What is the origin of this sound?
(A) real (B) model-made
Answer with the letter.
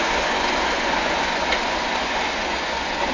B